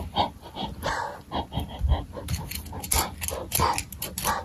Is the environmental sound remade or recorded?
recorded